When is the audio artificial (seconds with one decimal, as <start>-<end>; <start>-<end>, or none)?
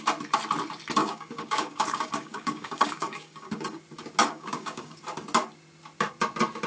1.0-3.8; 4.2-5.0